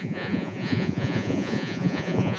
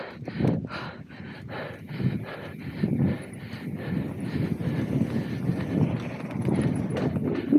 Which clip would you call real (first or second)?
second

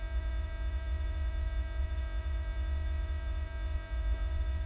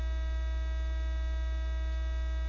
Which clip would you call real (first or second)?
second